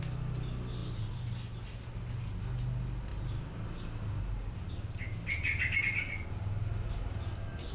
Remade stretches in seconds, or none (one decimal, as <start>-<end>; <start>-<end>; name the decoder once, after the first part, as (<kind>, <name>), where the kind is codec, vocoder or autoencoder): none